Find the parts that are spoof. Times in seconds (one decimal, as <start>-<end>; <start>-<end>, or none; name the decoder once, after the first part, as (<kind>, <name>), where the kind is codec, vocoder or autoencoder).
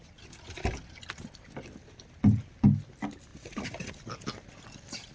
3.3-3.9 (vocoder, Vocos)